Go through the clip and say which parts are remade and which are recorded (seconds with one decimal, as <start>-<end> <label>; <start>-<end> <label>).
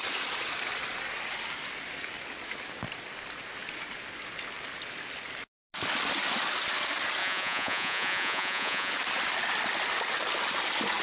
0.0-7.2 recorded; 7.2-8.9 remade; 8.9-11.0 recorded